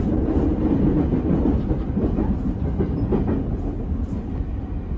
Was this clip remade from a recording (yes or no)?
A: no